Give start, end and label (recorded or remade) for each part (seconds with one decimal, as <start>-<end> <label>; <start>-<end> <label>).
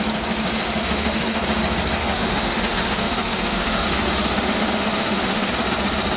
0.0-0.8 recorded; 0.8-1.4 remade; 1.4-2.0 recorded; 2.0-5.5 remade; 5.5-6.2 recorded